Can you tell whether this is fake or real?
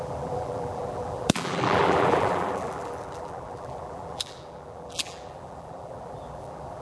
fake